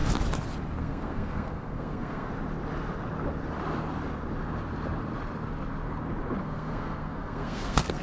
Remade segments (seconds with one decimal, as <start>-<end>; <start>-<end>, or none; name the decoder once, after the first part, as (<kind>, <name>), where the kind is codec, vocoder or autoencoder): 0.8-2.3 (codec, SNAC); 6.4-8.0